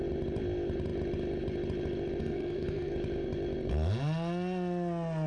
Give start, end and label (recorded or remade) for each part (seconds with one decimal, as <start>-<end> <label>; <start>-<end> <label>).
0.0-2.2 recorded; 2.2-2.9 remade; 2.9-5.3 recorded